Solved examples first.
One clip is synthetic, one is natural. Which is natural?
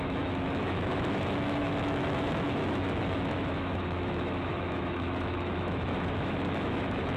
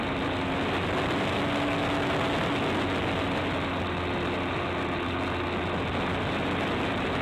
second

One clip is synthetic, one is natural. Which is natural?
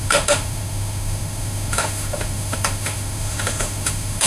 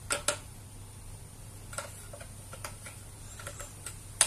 second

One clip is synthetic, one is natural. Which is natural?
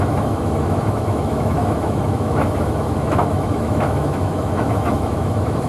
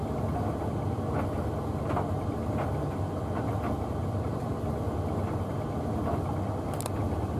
second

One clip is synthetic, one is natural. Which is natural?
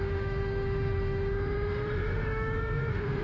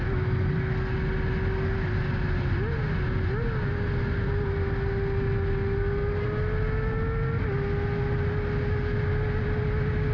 second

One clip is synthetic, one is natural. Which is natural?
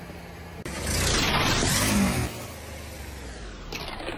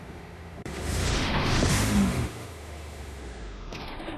first